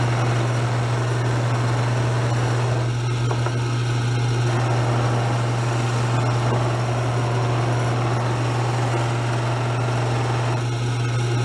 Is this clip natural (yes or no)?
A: yes